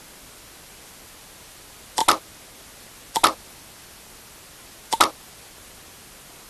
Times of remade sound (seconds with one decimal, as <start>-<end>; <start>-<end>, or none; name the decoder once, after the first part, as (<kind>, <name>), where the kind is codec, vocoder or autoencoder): none